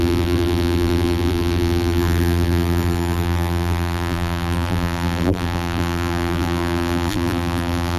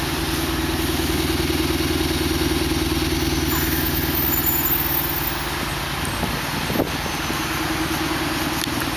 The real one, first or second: second